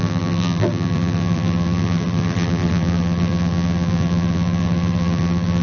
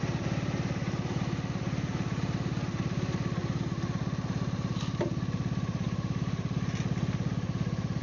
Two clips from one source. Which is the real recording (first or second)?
second